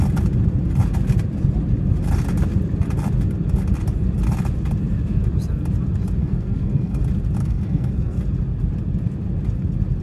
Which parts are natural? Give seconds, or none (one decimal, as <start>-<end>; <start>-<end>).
0.0-6.2; 7.0-7.4; 8.2-10.0